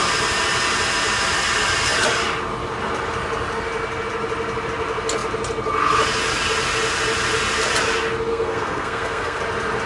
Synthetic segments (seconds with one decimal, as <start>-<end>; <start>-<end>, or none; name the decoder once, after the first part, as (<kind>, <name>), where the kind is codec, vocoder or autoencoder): 8.3-9.4 (codec, SNAC)